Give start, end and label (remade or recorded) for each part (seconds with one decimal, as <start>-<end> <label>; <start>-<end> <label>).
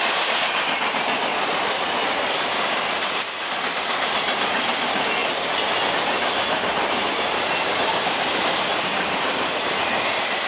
0.0-10.5 recorded